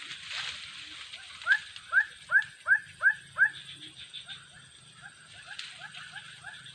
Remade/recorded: recorded